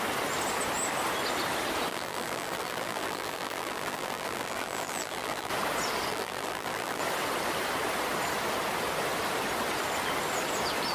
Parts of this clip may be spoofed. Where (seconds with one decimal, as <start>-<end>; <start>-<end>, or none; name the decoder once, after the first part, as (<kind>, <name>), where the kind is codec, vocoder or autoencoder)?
1.9-5.5 (vocoder, BigVGAN v2); 6.1-7.0